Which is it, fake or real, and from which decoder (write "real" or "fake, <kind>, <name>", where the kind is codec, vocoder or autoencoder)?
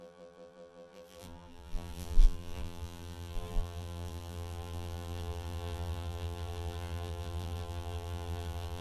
fake, vocoder, BigVGAN v2